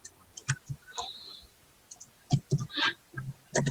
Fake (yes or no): no